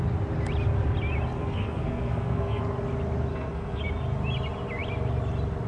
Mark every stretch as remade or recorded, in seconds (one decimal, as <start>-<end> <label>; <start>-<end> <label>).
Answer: 0.0-1.4 recorded; 1.4-2.6 remade; 2.6-3.3 recorded; 3.3-3.8 remade; 3.8-5.7 recorded